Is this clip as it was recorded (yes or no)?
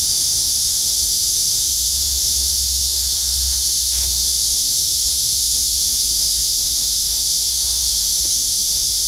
no